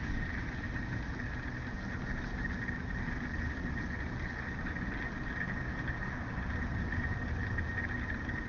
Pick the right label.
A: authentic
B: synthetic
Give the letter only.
A